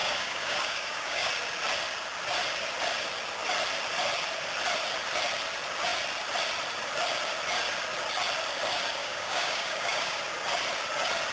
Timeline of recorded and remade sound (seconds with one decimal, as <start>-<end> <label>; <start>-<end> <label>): 0.0-1.3 remade; 1.3-9.0 recorded; 9.0-10.2 remade; 10.2-11.3 recorded

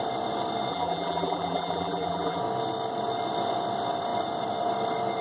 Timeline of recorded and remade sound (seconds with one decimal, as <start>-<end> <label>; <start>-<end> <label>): 0.0-0.7 recorded; 0.7-2.4 remade; 2.4-5.2 recorded

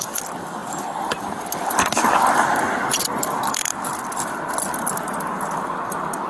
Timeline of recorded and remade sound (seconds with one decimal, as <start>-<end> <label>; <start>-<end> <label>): 0.0-6.3 recorded